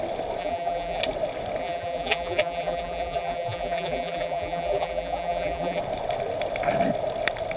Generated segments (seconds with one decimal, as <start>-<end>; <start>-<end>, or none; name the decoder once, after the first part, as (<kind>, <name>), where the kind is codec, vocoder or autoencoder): 0.4-1.0 (vocoder, BigVGAN v2); 1.6-5.8